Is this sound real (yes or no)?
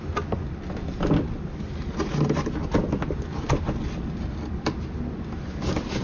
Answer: yes